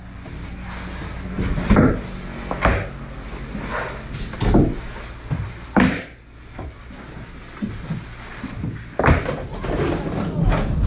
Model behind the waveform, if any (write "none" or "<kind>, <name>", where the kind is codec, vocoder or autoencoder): none